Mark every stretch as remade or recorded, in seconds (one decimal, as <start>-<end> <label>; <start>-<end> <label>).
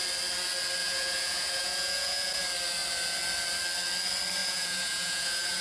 0.0-0.8 recorded; 0.8-2.4 remade; 2.4-4.4 recorded; 4.4-5.6 remade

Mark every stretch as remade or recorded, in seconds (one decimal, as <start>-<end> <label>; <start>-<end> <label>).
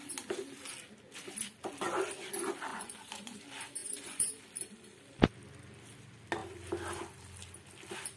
0.0-2.7 recorded; 2.7-3.4 remade; 3.4-3.8 recorded; 3.8-4.4 remade; 4.4-8.2 recorded